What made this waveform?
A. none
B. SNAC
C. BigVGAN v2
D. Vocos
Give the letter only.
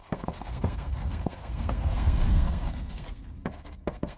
B